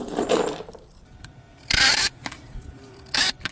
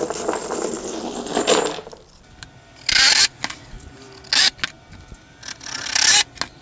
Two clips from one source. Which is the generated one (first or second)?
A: first